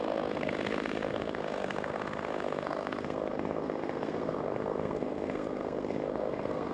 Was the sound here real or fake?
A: fake